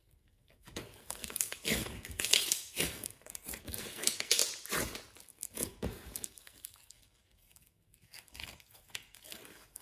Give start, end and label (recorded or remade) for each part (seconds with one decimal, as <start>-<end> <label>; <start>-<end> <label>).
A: 0.0-4.4 remade; 4.4-5.2 recorded; 5.2-9.8 remade